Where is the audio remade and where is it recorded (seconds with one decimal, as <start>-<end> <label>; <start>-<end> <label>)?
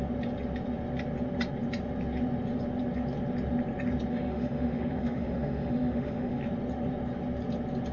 0.0-4.1 recorded; 4.1-6.4 remade; 6.4-7.9 recorded